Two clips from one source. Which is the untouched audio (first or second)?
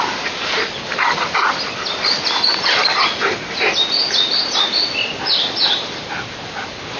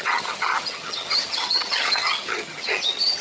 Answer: first